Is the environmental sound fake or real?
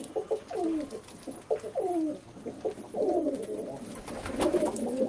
real